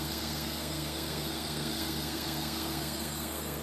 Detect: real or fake fake